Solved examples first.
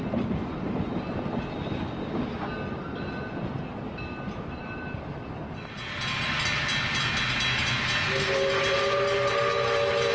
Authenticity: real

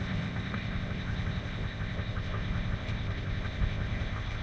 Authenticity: fake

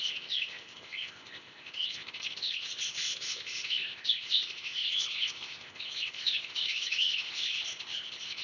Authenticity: fake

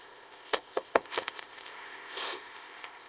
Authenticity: fake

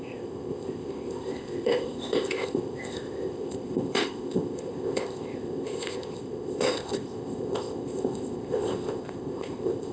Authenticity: fake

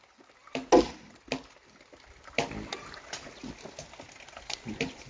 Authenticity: real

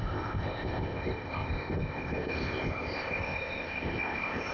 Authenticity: fake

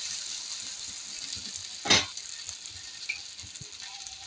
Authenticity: real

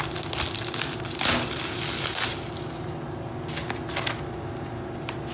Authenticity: real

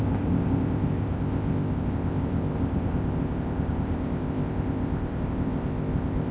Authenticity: fake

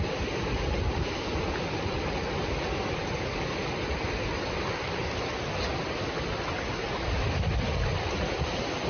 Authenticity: real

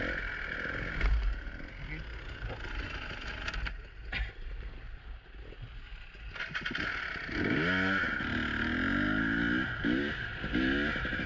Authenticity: real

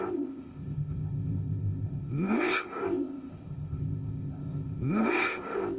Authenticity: fake